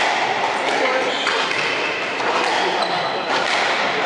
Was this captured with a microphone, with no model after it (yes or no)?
yes